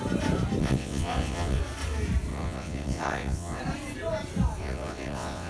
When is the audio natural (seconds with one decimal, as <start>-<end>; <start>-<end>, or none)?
0.0-0.6; 1.6-2.3; 3.6-4.6